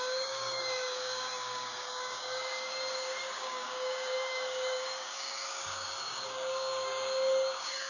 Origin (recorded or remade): remade